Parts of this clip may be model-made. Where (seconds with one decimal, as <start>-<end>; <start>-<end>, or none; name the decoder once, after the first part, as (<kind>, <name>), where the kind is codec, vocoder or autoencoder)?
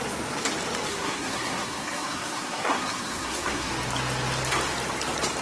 0.9-3.7 (codec, SNAC)